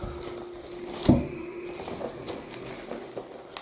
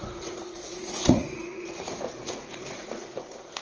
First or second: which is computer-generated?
second